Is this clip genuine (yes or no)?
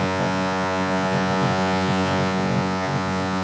no